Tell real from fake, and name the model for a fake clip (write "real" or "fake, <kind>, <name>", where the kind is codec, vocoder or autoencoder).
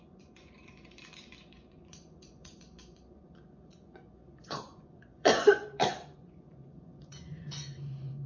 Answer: fake, vocoder, Vocos